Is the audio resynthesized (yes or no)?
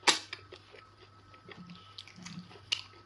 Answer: no